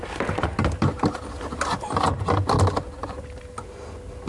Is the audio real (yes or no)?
yes